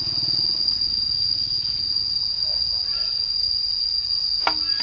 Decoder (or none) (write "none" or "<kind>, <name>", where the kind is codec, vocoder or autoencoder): none